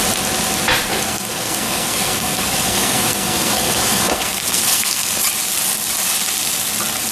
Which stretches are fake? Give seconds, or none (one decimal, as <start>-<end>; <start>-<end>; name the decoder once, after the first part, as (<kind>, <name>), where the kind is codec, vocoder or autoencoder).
0.9-5.2 (codec, SNAC)